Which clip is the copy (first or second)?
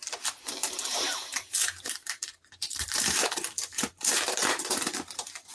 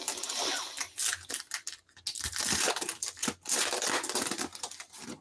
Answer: first